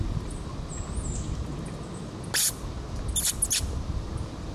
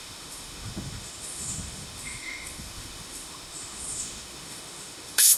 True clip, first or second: first